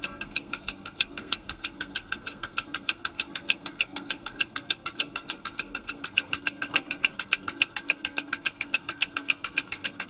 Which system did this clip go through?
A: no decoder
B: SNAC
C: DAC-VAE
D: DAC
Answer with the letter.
B